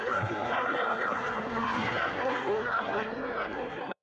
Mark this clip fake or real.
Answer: fake